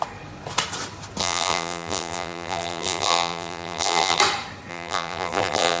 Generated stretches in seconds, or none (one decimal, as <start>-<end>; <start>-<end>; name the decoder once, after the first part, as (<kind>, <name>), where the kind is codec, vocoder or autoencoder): 1.2-4.2 (vocoder, BigVGAN v2); 4.7-5.8